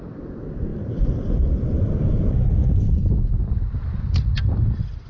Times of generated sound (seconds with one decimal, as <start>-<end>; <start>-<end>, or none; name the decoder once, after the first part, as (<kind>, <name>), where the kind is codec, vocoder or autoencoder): none